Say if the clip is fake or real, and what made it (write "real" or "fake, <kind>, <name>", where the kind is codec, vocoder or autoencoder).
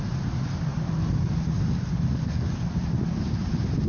real